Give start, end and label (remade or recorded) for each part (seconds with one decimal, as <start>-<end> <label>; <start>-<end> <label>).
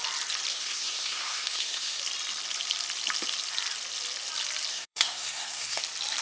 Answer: 0.0-0.5 recorded; 0.5-2.0 remade; 2.0-4.7 recorded; 4.7-5.8 remade; 5.8-6.2 recorded